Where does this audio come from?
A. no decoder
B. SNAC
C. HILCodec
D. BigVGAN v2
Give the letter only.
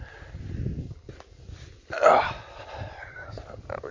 A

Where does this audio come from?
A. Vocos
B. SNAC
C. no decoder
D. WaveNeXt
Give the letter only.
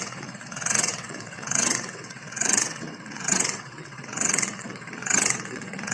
D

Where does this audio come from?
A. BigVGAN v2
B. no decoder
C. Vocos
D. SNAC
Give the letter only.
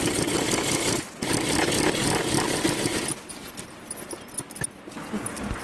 B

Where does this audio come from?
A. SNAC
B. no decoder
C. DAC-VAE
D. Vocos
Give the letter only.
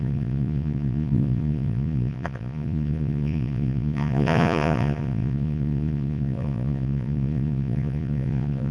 D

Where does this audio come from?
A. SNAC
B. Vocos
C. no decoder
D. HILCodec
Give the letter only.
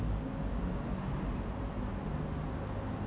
C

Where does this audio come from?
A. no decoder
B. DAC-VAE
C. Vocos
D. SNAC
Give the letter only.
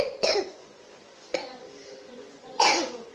C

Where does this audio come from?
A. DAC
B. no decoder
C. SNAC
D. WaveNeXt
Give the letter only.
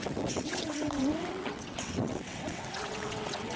D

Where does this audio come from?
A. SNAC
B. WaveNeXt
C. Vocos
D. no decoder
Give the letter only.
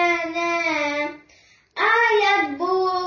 D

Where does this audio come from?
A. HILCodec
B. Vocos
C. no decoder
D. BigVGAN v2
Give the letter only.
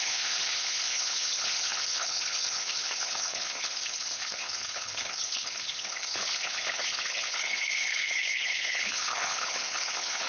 A